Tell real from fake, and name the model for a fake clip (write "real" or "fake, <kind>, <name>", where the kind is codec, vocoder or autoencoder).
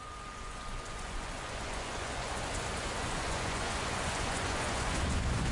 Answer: fake, vocoder, Vocos